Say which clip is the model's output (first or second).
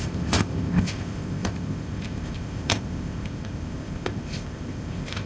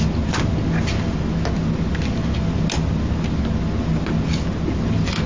first